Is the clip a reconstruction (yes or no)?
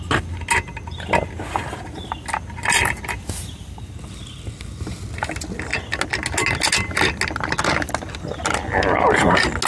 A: no